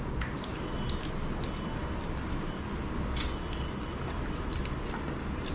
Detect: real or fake real